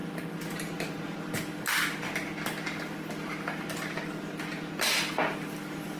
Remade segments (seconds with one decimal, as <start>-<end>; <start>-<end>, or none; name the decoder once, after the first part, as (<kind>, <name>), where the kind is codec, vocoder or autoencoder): none